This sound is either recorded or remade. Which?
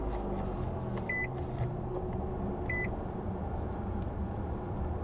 recorded